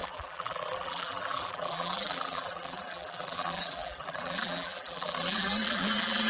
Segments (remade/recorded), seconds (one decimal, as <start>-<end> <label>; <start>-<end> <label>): 0.0-6.3 remade